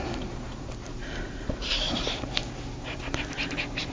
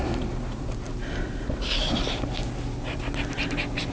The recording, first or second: second